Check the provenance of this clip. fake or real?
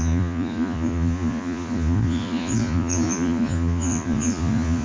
fake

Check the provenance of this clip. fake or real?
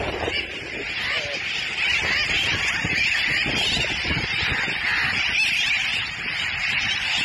real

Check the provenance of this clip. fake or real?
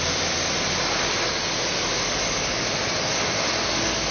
real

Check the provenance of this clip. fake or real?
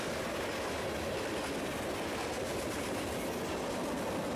real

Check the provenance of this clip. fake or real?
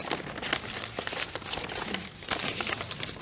real